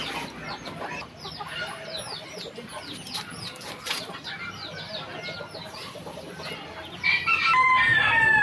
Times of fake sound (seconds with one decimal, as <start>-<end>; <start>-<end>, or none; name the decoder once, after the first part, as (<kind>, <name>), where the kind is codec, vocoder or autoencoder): none